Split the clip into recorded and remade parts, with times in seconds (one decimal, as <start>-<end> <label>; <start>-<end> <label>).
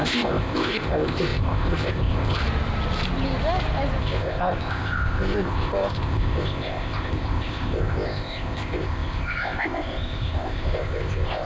0.0-2.4 remade; 2.4-4.0 recorded; 4.0-11.4 remade